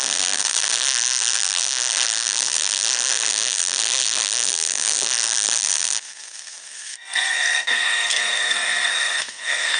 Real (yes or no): no